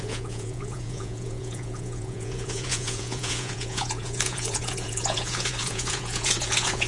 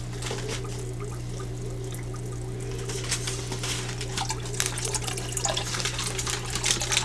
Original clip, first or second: second